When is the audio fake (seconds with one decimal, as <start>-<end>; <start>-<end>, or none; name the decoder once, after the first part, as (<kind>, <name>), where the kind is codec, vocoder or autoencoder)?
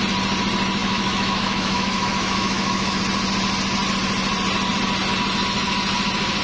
0.8-3.0 (autoencoder, DAC-VAE)